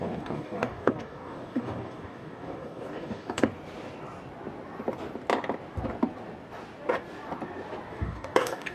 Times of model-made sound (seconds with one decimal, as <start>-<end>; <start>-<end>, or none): 0.0-3.4; 7.9-8.7